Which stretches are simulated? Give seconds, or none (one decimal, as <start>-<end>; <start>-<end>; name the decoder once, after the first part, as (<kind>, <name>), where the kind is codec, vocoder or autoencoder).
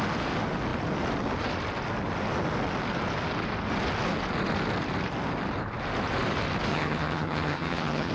6.7-8.1 (vocoder, HiFi-GAN)